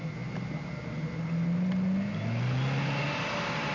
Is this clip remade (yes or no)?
no